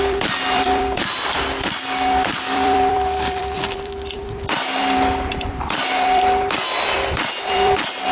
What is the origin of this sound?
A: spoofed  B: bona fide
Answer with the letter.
A